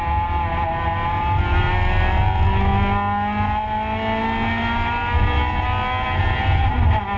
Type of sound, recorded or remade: recorded